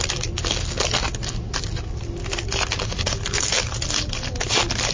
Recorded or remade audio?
recorded